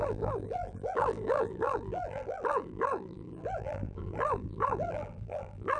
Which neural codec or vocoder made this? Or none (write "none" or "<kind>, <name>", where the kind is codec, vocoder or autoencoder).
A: vocoder, BigVGAN v2